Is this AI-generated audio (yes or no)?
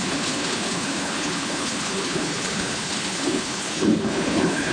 yes